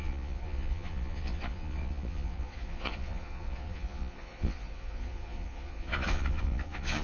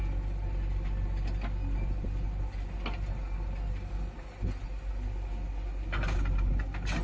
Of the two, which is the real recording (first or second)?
second